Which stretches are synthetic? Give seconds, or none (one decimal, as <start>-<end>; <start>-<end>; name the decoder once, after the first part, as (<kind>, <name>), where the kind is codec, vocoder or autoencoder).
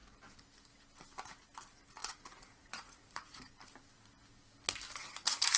2.0-3.4 (vocoder, Vocos)